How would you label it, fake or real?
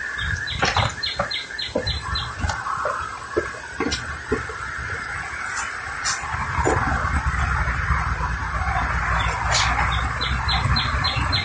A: real